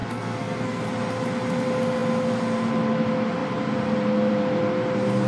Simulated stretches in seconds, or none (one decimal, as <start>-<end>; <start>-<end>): 0.0-0.8